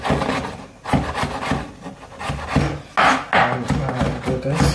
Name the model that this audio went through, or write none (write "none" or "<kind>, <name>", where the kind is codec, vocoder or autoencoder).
none